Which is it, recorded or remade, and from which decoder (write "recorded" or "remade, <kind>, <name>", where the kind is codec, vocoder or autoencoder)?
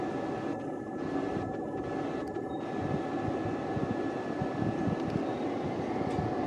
recorded